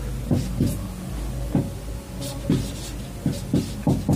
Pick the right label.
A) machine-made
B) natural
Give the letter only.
B